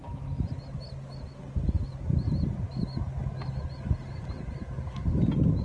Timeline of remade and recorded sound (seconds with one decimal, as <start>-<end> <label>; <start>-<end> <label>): 0.0-0.5 remade; 0.5-5.6 recorded